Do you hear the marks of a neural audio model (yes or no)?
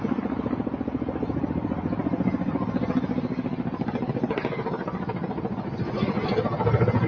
no